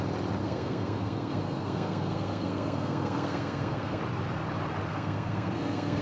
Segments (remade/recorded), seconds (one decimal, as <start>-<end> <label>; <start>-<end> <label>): 0.0-0.4 recorded; 0.4-4.0 remade; 4.0-4.9 recorded; 4.9-6.0 remade